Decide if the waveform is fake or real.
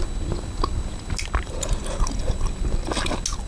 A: real